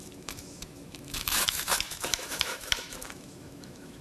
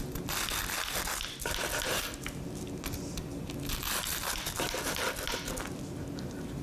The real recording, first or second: second